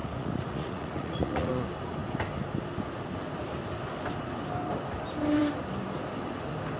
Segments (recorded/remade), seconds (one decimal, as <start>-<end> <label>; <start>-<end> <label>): 0.0-1.5 remade; 1.5-6.8 recorded